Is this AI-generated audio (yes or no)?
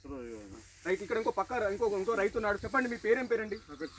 no